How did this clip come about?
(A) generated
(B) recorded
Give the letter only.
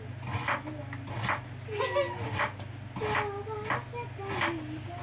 B